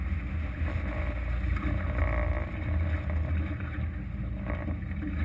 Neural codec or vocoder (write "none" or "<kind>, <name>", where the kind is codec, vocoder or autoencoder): none